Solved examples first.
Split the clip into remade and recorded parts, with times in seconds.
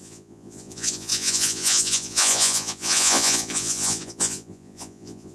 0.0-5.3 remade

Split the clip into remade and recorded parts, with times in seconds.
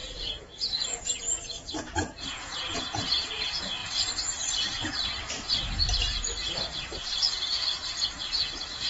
0.0-3.8 remade; 3.8-8.2 recorded; 8.2-8.9 remade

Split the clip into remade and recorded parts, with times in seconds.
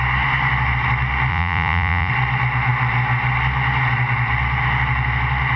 0.0-1.3 recorded; 1.3-2.1 remade; 2.1-5.6 recorded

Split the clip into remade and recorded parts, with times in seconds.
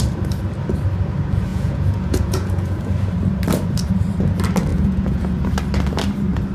0.0-1.5 recorded; 1.5-2.9 remade; 2.9-4.7 recorded; 4.7-5.5 remade; 5.5-6.5 recorded